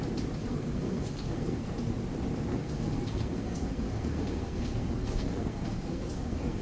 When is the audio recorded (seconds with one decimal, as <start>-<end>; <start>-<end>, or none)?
0.0-0.4; 1.7-2.5